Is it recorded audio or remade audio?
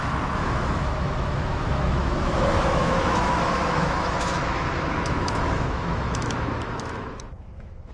remade